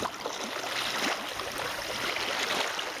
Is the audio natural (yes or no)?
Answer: yes